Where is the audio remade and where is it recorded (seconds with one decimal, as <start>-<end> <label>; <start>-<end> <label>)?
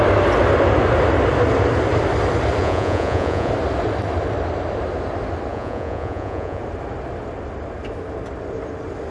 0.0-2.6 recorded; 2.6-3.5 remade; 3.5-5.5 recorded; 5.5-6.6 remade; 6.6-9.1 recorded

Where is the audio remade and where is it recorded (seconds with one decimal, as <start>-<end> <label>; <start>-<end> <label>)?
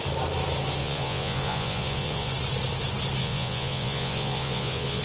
0.0-0.8 recorded; 0.8-2.3 remade; 2.3-3.2 recorded; 3.2-5.0 remade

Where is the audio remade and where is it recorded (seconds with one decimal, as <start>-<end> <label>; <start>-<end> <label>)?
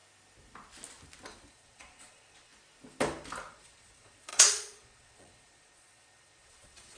0.0-1.5 recorded; 1.5-2.5 remade; 2.5-3.5 recorded; 3.5-7.0 remade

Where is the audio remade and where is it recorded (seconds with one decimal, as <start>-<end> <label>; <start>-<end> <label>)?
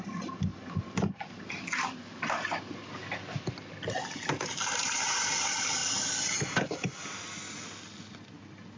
0.0-8.8 recorded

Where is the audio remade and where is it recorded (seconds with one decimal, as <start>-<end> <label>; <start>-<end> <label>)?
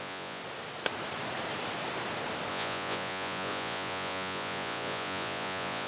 0.0-0.4 remade; 0.4-2.5 recorded; 2.5-5.9 remade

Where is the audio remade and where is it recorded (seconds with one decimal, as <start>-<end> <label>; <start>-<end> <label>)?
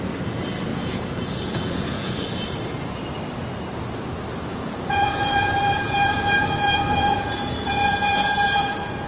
0.0-0.7 recorded; 0.7-2.1 remade; 2.1-4.5 recorded; 4.5-9.1 remade